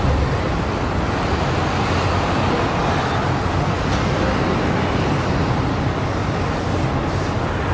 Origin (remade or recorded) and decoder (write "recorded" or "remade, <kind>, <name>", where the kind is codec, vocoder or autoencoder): recorded